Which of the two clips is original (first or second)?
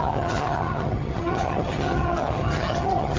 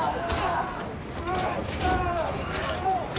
second